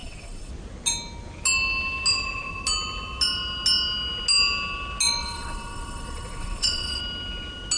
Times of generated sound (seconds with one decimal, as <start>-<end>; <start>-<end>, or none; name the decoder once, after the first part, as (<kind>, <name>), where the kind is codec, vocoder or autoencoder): 0.0-0.5 (vocoder, WaveNeXt); 5.2-7.0